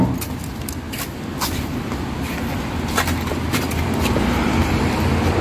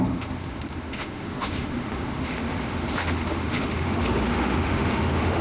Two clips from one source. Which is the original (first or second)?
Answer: first